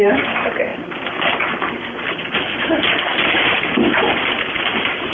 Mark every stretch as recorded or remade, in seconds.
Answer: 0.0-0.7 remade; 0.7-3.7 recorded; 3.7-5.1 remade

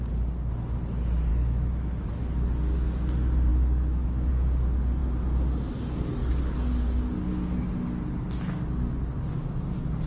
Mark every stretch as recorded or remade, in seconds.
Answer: 0.0-1.3 recorded; 1.3-2.2 remade; 2.2-3.5 recorded; 3.5-4.3 remade; 4.3-10.1 recorded

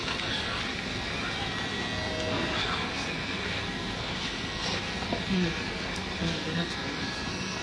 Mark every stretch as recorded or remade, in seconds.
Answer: 0.0-1.1 remade; 1.1-2.3 recorded; 2.3-7.6 remade

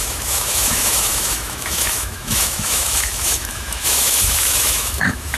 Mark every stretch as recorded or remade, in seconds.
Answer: 0.0-5.4 remade

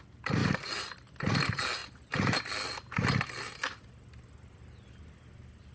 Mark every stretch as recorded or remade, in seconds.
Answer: 0.0-0.4 recorded; 0.4-1.1 remade; 1.1-1.8 recorded; 1.8-2.4 remade; 2.4-5.7 recorded

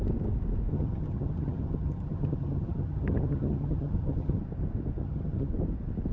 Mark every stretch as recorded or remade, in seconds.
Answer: 0.0-0.7 recorded; 0.7-4.4 remade; 4.4-5.0 recorded; 5.0-5.5 remade; 5.5-6.1 recorded

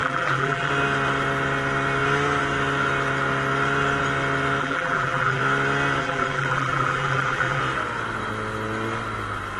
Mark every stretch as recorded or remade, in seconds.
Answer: 0.0-0.7 remade; 0.7-4.6 recorded; 4.6-5.4 remade; 5.4-6.0 recorded; 6.0-7.6 remade; 7.6-9.6 recorded